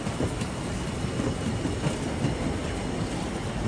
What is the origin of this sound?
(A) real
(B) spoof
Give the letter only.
A